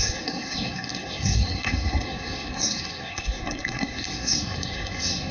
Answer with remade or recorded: remade